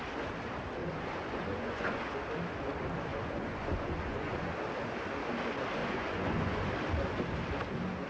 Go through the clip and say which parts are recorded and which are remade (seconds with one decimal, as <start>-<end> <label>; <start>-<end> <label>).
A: 0.0-0.8 recorded; 0.8-2.0 remade; 2.0-3.1 recorded; 3.1-4.5 remade; 4.5-5.8 recorded; 5.8-6.7 remade; 6.7-8.1 recorded